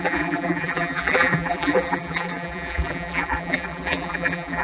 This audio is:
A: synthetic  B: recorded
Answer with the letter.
A